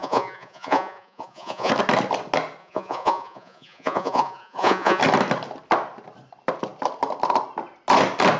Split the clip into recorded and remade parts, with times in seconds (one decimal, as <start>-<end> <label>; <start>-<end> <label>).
0.0-1.7 remade; 1.7-2.6 recorded; 2.6-5.0 remade; 5.0-8.4 recorded

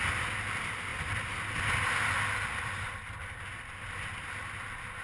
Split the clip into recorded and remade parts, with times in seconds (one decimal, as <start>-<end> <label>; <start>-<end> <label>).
0.0-5.0 recorded

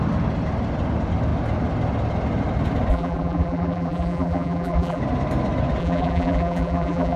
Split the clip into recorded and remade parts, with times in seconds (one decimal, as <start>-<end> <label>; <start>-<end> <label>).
0.0-2.9 recorded; 2.9-5.0 remade; 5.0-5.8 recorded; 5.8-7.2 remade

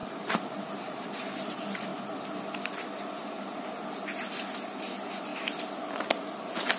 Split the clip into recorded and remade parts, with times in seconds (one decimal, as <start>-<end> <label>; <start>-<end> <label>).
0.0-1.9 remade; 1.9-4.8 recorded; 4.8-5.3 remade; 5.3-6.2 recorded; 6.2-6.8 remade

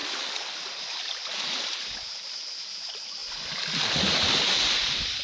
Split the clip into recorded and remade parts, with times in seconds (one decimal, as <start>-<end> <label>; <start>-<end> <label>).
0.0-5.2 recorded

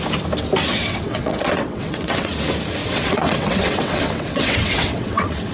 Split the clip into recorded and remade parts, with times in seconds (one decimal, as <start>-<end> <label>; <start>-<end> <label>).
0.0-0.7 recorded; 0.7-2.3 remade; 2.3-2.8 recorded; 2.8-5.5 remade

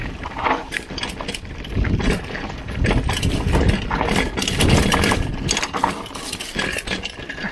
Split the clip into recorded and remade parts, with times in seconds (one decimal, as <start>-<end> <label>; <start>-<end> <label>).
0.0-0.9 remade; 0.9-7.5 recorded